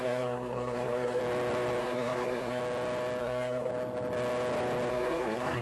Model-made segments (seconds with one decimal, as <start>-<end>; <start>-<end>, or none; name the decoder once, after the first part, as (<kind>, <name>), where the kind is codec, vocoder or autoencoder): 0.0-1.2 (codec, SNAC); 1.8-2.6; 3.2-3.7; 4.9-5.6